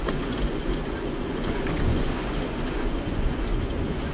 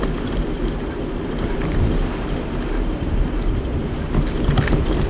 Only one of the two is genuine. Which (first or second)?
second